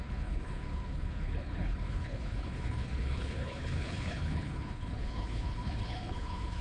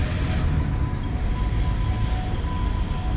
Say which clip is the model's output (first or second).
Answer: first